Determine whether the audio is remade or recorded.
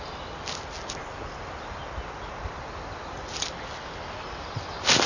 recorded